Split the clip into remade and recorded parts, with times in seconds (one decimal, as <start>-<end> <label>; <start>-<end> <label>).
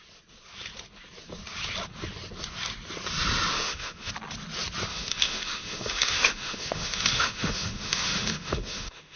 0.0-3.5 recorded; 3.5-4.1 remade; 4.1-4.9 recorded; 4.9-9.2 remade